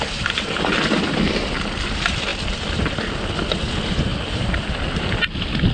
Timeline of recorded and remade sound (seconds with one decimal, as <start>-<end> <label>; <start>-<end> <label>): 0.0-2.3 recorded; 2.3-2.9 remade; 2.9-4.1 recorded; 4.1-5.0 remade; 5.0-5.7 recorded

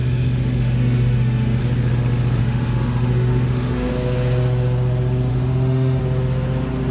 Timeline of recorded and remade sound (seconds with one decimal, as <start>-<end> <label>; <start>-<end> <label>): 0.0-1.6 remade; 1.6-2.4 recorded; 2.4-3.9 remade; 3.9-5.3 recorded; 5.3-6.0 remade; 6.0-6.9 recorded